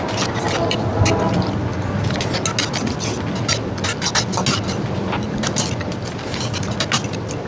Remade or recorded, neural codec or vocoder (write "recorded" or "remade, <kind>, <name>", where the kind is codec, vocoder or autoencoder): recorded